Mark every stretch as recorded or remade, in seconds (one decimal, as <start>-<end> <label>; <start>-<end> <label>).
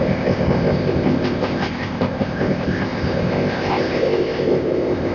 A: 0.0-5.1 remade